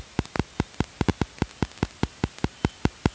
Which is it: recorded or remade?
recorded